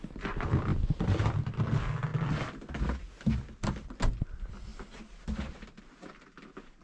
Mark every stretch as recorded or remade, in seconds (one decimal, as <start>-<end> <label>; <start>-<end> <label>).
0.0-6.8 recorded